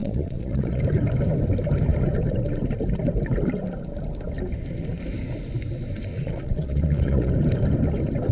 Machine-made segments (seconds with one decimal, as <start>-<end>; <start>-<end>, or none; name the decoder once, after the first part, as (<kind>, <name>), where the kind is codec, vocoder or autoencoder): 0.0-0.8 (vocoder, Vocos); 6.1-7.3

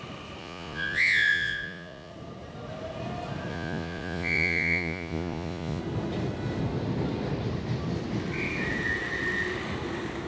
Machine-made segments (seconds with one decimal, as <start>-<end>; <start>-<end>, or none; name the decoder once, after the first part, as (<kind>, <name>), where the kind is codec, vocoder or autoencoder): 0.4-2.1 (vocoder, Vocos); 3.5-5.8

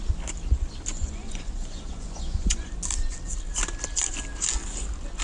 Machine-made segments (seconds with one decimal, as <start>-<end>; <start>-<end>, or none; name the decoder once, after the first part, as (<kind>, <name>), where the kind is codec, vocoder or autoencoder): 0.9-2.7 (vocoder, Vocos)